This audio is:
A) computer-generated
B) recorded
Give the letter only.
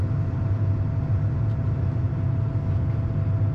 B